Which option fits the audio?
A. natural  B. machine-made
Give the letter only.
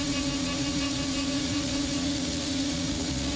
B